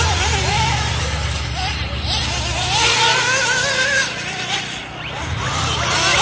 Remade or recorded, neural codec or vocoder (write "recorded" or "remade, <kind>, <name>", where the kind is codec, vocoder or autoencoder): remade, vocoder, BigVGAN v2